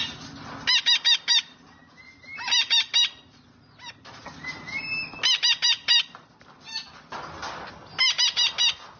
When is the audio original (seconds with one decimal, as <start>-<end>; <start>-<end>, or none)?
0.0-9.0